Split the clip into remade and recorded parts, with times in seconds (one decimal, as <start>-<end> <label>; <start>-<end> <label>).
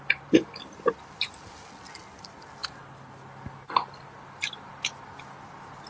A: 0.0-5.9 recorded